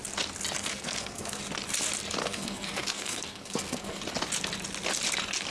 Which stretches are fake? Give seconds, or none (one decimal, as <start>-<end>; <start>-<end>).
0.6-1.4; 2.2-4.0

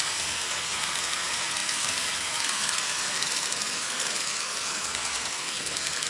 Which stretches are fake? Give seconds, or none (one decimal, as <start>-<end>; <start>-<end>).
0.0-6.1

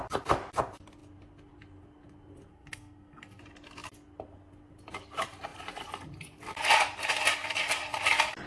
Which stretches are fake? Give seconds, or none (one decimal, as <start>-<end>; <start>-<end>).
2.5-3.4

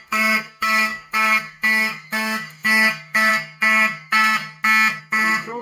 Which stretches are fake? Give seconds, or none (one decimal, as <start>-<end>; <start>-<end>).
0.0-4.4; 5.0-5.6

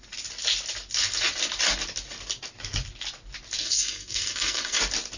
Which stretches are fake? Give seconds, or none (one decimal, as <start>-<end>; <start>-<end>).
3.6-4.8

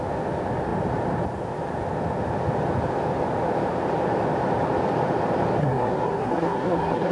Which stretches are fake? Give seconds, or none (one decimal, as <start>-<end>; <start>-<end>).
5.6-7.1

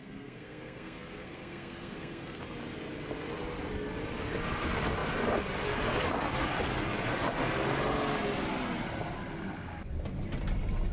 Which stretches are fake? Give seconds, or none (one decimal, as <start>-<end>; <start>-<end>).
0.0-2.4

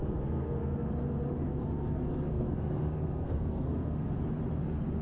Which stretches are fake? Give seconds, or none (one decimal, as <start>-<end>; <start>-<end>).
0.0-0.9; 2.3-4.2